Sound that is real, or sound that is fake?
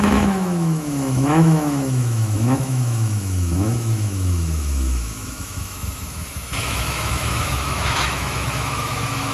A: fake